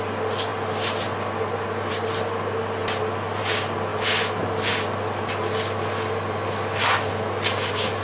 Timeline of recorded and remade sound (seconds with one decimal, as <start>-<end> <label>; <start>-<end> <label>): 0.0-8.0 recorded